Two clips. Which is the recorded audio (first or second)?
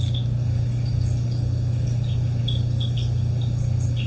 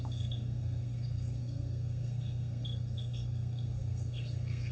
first